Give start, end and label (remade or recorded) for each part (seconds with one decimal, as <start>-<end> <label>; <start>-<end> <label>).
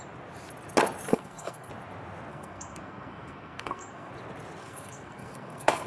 0.0-1.1 recorded; 1.1-1.7 remade; 1.7-2.3 recorded; 2.3-4.1 remade; 4.1-4.6 recorded; 4.6-5.9 remade